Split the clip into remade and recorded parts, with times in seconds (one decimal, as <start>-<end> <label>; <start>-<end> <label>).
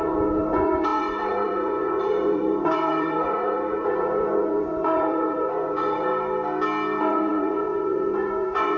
0.0-6.1 remade; 6.1-7.1 recorded; 7.1-8.8 remade